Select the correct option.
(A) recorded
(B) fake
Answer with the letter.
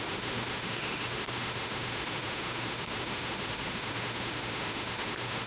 B